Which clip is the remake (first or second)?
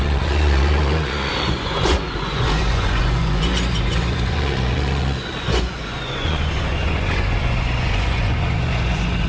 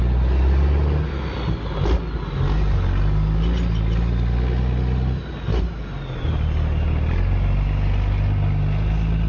first